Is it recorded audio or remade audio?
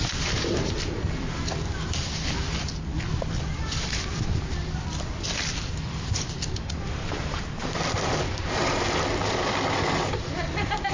recorded